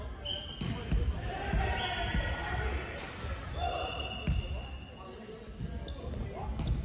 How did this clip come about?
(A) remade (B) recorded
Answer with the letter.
B